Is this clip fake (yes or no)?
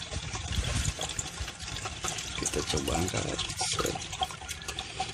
yes